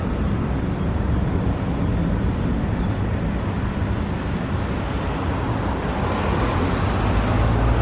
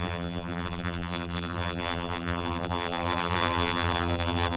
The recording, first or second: first